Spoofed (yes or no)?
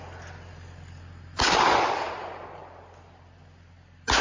no